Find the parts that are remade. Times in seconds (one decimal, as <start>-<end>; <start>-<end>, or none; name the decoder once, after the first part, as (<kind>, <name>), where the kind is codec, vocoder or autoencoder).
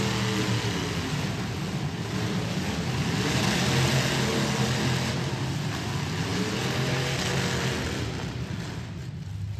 none